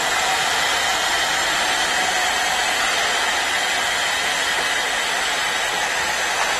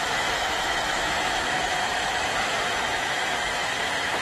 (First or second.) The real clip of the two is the first